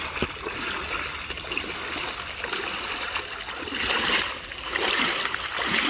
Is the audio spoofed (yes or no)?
no